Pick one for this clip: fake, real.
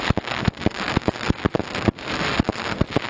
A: real